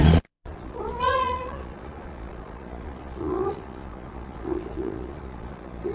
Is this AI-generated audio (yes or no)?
yes